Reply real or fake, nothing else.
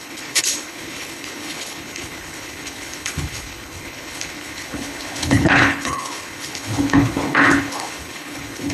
fake